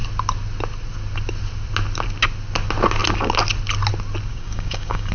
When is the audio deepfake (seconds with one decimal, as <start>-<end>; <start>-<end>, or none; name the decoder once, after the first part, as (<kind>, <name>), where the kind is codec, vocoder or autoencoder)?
4.3-5.1 (codec, DAC)